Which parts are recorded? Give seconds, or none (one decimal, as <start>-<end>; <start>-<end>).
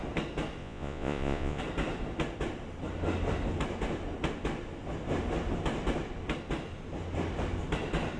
0.0-0.6; 1.6-8.2